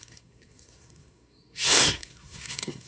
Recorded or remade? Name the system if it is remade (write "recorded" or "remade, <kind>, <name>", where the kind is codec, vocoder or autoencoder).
remade, codec, SNAC